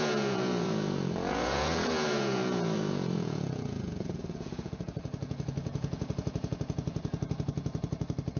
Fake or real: fake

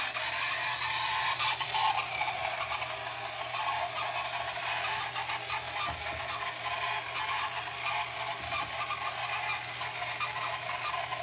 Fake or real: real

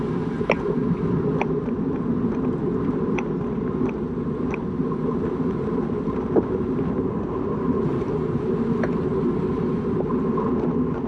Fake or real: real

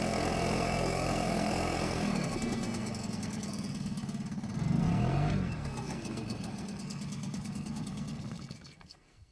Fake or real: fake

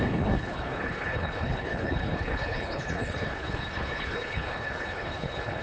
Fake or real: fake